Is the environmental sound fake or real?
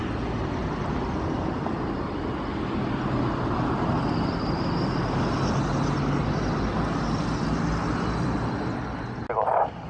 real